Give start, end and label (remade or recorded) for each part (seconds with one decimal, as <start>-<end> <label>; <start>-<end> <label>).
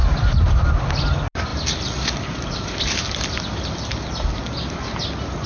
0.0-5.5 recorded